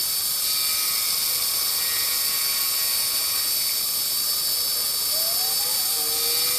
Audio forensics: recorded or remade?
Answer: recorded